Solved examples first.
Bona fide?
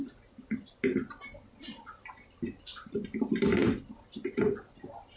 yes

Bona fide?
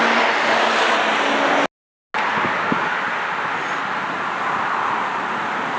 yes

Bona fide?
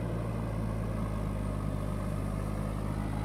yes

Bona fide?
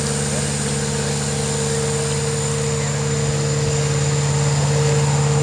yes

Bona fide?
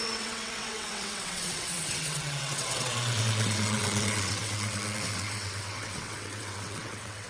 no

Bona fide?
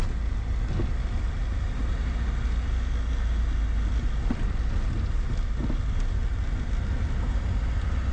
yes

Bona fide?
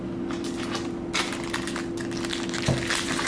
yes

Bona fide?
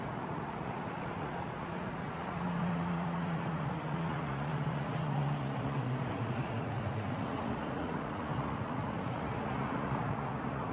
no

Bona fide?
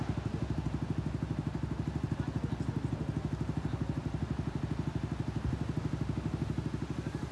yes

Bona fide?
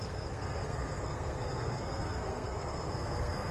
no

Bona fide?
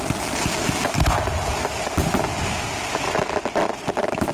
yes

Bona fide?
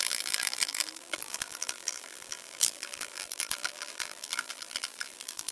no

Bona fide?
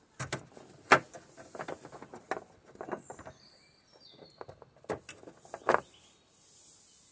yes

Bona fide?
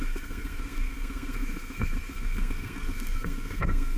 no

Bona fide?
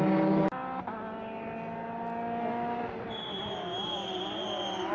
yes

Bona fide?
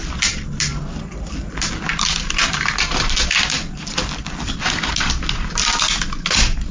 yes